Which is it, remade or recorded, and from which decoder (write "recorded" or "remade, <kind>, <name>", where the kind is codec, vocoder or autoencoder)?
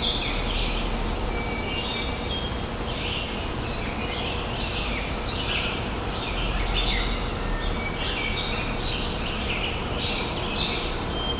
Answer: recorded